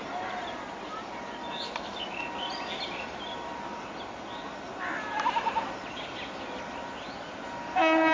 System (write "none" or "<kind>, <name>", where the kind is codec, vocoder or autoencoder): none